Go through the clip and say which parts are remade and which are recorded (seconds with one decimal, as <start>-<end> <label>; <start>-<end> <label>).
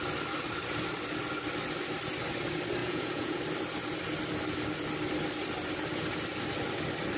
0.0-2.8 recorded; 2.8-3.4 remade; 3.4-7.2 recorded